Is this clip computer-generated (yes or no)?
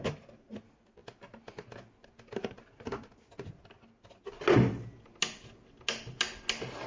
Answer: no